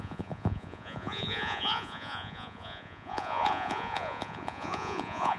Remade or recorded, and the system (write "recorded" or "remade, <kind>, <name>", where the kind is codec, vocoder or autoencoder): remade, vocoder, Vocos